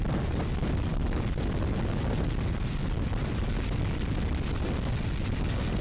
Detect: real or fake real